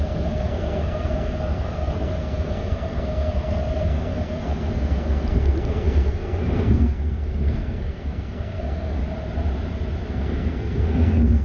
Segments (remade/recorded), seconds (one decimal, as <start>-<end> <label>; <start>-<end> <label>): 0.0-9.0 remade; 9.0-10.1 recorded; 10.1-11.4 remade